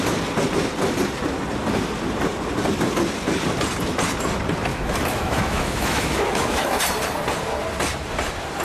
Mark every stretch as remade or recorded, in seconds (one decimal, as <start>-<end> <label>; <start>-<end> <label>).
0.0-4.7 recorded; 4.7-6.8 remade; 6.8-8.6 recorded